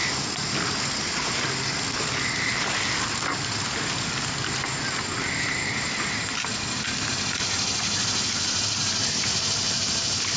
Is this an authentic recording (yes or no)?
yes